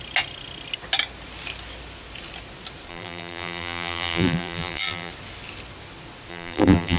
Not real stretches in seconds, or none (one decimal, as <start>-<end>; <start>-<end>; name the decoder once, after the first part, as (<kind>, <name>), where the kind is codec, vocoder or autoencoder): 2.9-5.1 (vocoder, BigVGAN v2); 6.3-7.0